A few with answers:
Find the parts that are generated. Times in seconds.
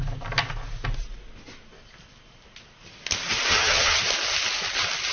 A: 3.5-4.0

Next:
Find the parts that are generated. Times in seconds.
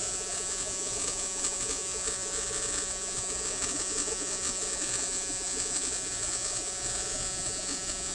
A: 0.0-8.1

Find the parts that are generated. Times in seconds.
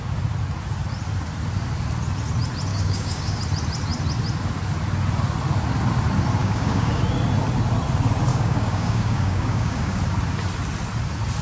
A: 2.7-3.4; 6.4-7.0; 8.3-10.0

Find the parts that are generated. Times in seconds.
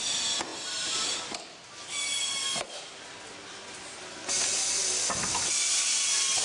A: none